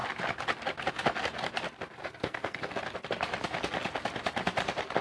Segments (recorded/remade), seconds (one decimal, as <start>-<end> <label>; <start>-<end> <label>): 0.0-2.0 recorded; 2.0-2.7 remade; 2.7-5.0 recorded